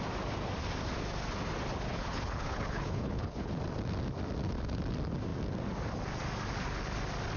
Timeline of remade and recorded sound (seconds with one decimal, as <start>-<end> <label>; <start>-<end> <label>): 0.0-1.9 recorded; 1.9-3.6 remade; 3.6-7.4 recorded